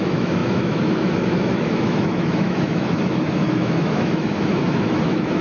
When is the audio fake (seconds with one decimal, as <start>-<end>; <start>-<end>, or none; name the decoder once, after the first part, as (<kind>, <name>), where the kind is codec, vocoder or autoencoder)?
0.0-5.4 (autoencoder, DAC-VAE)